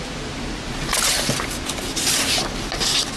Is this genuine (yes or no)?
yes